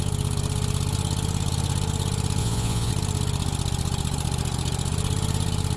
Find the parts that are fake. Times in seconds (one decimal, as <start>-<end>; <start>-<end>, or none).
2.4-2.9

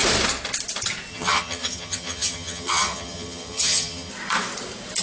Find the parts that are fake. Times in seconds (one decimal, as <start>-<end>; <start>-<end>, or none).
1.1-4.1

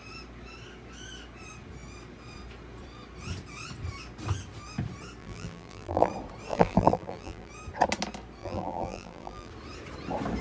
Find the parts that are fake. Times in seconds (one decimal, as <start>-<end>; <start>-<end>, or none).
5.2-6.1; 6.5-7.5; 8.4-9.5

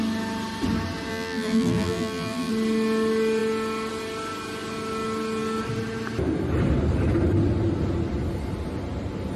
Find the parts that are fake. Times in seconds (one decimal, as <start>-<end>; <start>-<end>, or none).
1.1-2.5

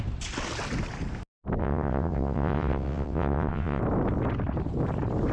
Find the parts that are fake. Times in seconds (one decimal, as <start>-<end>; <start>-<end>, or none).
1.6-3.8

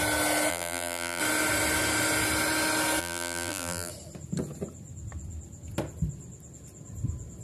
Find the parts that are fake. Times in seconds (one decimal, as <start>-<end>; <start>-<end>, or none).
0.5-1.2; 3.0-3.9

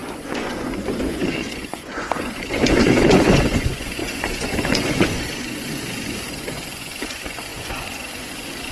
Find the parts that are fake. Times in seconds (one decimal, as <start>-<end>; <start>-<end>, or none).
0.0-8.7

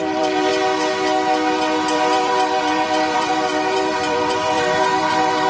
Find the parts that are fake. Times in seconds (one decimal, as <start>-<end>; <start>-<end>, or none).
0.0-0.5; 1.9-5.5